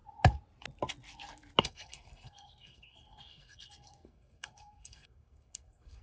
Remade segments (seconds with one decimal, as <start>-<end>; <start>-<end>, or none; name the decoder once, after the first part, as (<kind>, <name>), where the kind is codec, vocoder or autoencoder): 1.6-6.0 (codec, SNAC)